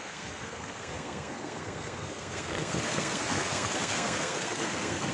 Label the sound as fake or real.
fake